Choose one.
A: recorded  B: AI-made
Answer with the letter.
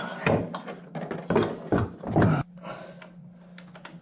A